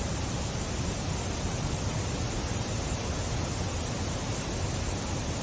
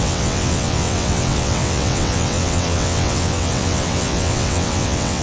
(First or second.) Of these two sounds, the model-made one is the second